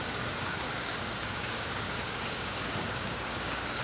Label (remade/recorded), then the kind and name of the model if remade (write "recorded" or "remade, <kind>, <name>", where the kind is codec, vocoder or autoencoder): remade, codec, DAC